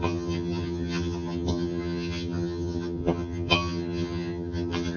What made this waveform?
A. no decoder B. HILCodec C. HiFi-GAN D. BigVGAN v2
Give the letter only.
C